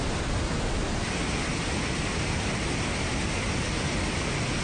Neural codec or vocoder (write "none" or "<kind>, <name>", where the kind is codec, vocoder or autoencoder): none